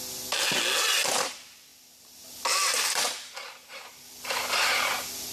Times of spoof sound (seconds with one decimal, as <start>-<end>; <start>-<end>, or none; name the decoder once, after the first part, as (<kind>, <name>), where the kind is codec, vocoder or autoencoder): none